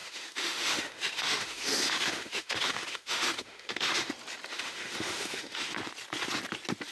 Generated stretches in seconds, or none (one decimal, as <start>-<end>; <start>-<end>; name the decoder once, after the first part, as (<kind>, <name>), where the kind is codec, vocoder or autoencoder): 0.0-4.1 (autoencoder, DAC-VAE); 4.5-5.7